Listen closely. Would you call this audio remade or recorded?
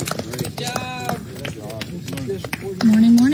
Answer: recorded